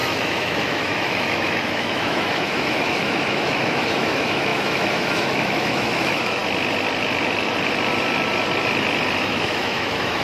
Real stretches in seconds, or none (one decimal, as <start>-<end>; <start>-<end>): 6.4-9.2